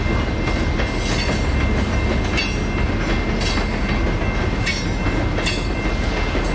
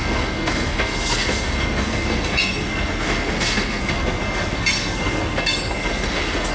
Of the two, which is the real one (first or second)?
first